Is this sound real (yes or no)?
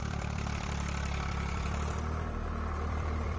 no